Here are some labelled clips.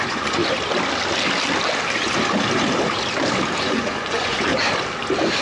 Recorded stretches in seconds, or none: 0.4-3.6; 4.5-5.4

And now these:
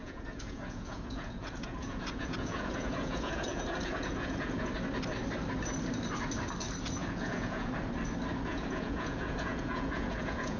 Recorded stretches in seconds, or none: 4.7-7.0; 7.7-8.5

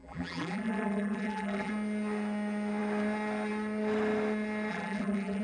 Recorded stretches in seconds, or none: 1.7-4.7

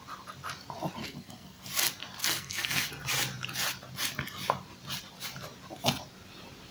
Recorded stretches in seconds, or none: 0.0-1.0; 1.6-2.2; 2.9-6.7

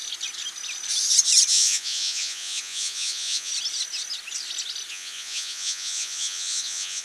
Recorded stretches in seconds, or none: 0.0-1.5; 3.5-4.9

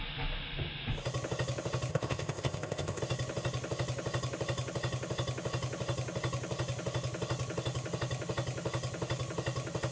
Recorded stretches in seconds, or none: 0.0-1.9; 3.0-9.9